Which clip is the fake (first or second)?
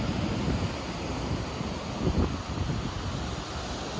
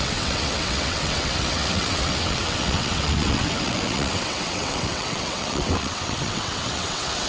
second